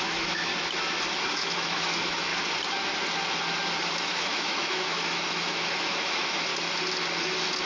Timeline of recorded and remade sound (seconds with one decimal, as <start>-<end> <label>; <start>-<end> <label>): 0.0-0.5 remade; 0.5-1.3 recorded; 1.3-2.3 remade; 2.3-4.0 recorded; 4.0-6.5 remade; 6.5-7.7 recorded